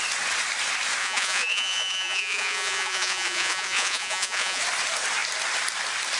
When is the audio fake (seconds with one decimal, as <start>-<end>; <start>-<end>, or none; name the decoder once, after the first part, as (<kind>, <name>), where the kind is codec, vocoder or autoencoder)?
1.0-4.6 (vocoder, Vocos)